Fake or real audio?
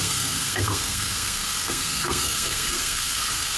fake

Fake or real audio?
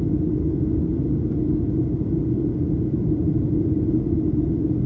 real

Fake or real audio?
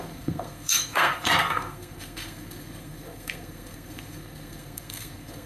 fake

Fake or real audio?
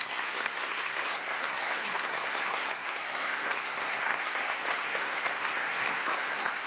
fake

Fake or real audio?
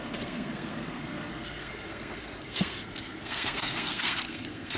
fake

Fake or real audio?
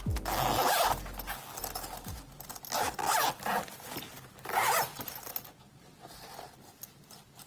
real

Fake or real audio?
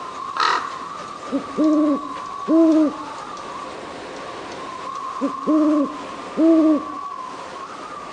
real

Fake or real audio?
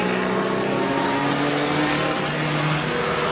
real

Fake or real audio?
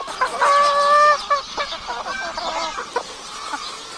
real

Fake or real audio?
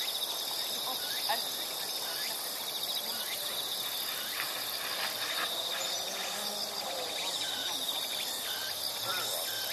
real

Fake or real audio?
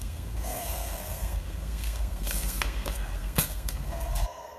fake